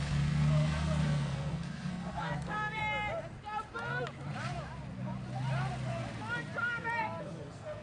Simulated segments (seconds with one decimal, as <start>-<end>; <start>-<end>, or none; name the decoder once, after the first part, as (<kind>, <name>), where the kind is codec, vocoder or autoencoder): 0.0-2.8 (codec, SNAC); 7.2-7.8